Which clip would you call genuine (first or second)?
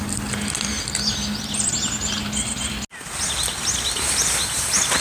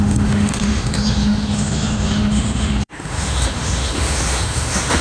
first